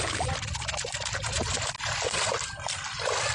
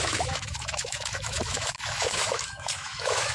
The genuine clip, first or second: first